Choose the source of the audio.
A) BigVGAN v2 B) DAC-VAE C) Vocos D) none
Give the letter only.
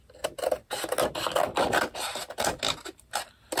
D